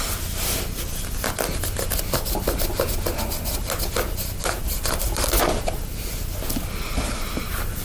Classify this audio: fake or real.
real